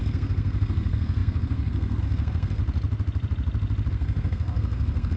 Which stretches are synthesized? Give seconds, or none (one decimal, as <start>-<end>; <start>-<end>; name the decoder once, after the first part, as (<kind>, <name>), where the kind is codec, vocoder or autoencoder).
0.0-2.6 (codec, SNAC); 3.9-5.2